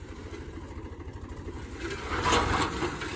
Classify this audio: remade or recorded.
recorded